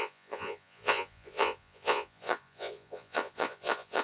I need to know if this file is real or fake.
fake